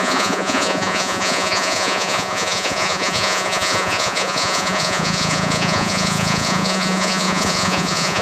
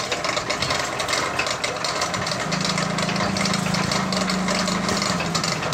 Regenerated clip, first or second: first